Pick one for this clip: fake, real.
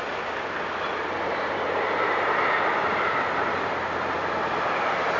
fake